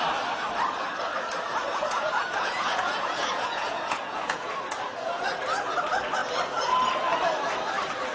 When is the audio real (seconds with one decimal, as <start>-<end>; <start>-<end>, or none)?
0.0-1.6; 4.5-8.1